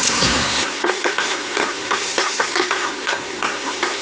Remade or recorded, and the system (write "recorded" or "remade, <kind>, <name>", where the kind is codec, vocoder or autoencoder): remade, codec, SNAC